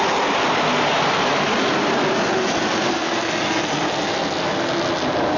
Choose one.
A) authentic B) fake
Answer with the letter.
A